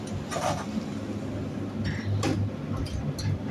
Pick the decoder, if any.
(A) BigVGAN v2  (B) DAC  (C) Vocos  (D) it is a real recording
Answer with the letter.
D